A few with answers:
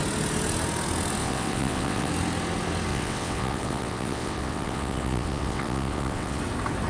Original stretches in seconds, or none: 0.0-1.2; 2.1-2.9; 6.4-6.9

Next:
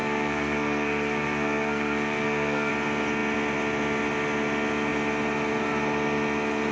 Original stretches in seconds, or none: 2.7-6.7

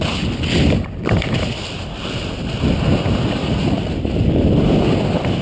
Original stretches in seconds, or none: 0.0-3.4; 3.9-5.4

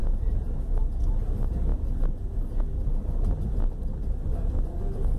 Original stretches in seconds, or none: 0.0-5.2